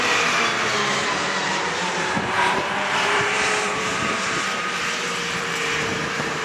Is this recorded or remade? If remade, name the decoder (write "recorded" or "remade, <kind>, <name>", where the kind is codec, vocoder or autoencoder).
remade, vocoder, BigVGAN v2